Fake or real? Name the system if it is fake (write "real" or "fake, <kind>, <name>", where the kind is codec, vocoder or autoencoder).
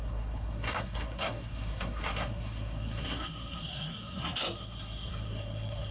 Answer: fake, codec, SNAC